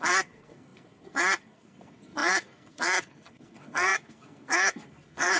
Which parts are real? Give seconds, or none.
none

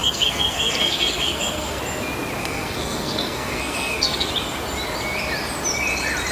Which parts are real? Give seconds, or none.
1.8-2.4; 4.3-6.3

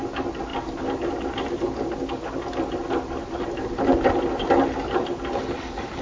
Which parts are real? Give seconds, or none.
0.0-6.0

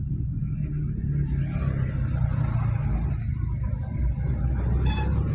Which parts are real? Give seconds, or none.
0.0-5.3

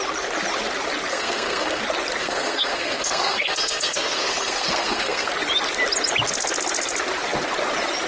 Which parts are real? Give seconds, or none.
0.0-1.1; 1.8-2.2; 5.3-8.1

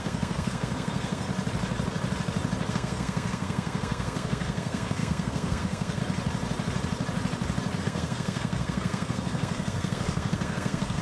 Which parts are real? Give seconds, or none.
1.3-2.7; 6.0-7.8

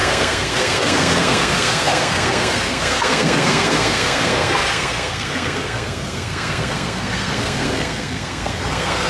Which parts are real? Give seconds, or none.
none